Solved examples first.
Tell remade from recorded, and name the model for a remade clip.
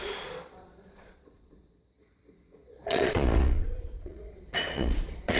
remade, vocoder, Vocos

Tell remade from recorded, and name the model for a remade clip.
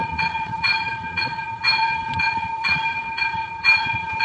remade, vocoder, Vocos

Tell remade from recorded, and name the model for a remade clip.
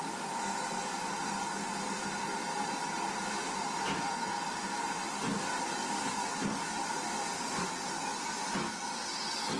recorded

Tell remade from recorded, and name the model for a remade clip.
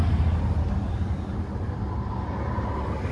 recorded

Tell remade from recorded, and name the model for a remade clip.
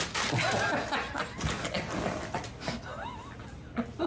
recorded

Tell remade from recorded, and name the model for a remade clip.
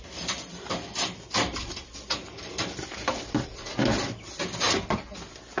recorded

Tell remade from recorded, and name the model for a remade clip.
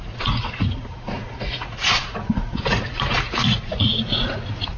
remade, vocoder, Vocos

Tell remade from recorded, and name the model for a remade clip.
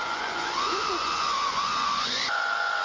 remade, vocoder, Vocos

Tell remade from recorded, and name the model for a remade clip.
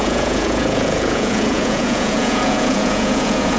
remade, vocoder, Vocos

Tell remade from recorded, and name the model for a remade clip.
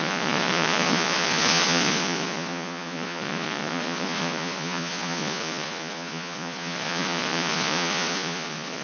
remade, vocoder, Vocos